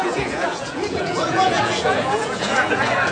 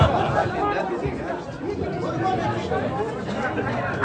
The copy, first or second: first